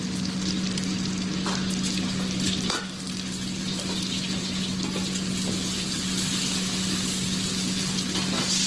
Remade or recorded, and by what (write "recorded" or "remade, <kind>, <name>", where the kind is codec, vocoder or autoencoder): recorded